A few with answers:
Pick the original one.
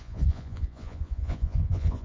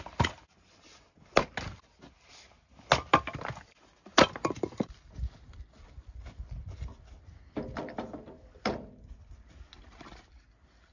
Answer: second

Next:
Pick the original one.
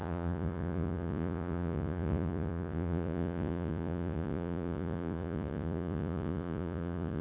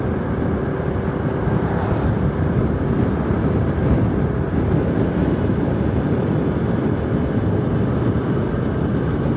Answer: second